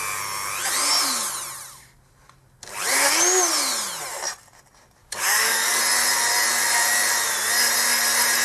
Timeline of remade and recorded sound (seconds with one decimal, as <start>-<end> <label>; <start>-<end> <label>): 0.0-5.0 recorded; 5.0-5.8 remade; 5.8-8.4 recorded